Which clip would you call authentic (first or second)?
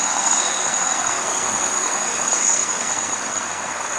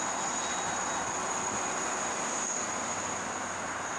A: second